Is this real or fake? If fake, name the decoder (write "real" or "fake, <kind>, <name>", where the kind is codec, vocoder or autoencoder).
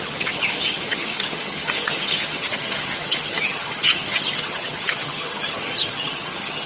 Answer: fake, vocoder, HiFi-GAN